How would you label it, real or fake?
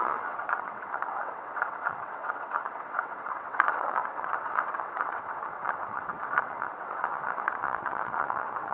fake